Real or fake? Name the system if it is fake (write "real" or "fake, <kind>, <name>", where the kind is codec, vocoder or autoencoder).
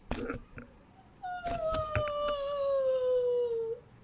real